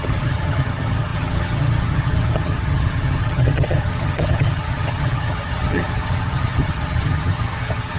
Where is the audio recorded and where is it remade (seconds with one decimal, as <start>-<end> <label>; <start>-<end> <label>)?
0.0-8.0 remade